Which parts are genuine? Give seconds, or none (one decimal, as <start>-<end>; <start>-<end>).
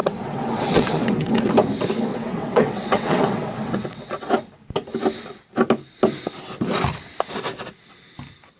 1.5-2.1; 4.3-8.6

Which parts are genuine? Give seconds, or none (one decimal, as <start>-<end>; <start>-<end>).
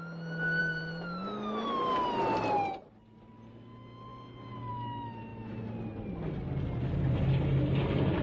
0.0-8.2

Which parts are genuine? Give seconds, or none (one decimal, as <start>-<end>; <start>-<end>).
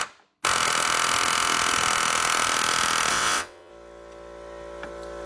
0.0-3.1; 3.7-5.3